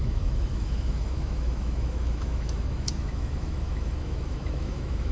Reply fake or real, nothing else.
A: fake